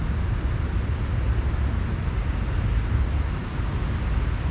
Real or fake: real